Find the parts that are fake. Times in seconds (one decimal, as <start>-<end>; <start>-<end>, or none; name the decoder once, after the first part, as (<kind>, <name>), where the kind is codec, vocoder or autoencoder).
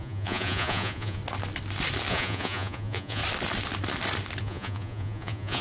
0.0-1.2 (vocoder, Vocos); 2.1-3.2; 4.4-5.6